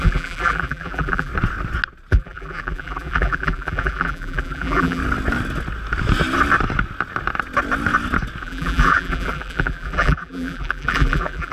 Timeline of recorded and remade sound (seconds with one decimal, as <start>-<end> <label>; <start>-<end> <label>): 0.0-1.3 remade; 1.3-2.1 recorded; 2.1-5.0 remade; 5.0-8.4 recorded; 8.4-11.5 remade